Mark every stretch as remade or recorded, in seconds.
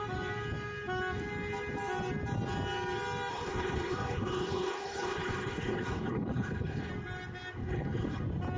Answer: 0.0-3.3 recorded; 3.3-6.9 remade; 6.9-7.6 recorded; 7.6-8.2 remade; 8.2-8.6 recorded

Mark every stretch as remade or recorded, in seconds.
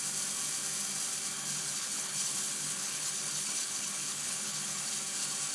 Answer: 0.0-1.6 recorded; 1.6-4.9 remade; 4.9-5.5 recorded